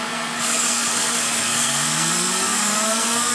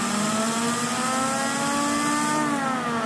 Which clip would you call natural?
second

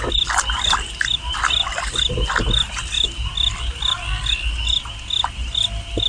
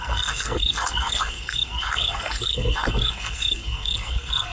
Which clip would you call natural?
first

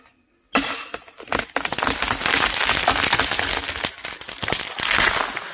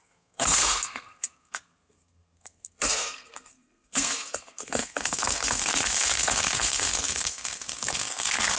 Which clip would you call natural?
first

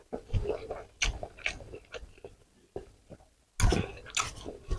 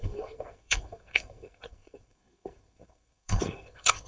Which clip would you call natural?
first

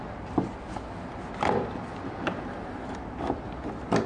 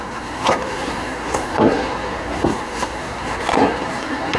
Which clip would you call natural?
first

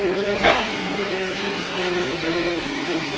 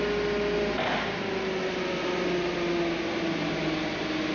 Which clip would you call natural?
second